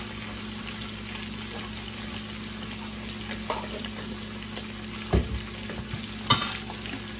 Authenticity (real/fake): real